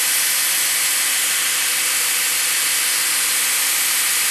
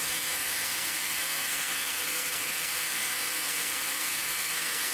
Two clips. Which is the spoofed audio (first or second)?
second